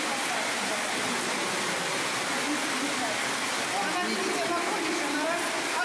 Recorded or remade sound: recorded